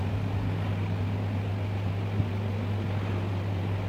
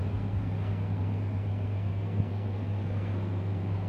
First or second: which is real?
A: first